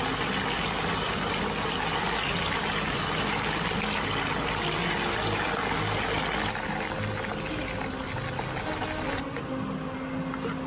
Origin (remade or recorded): recorded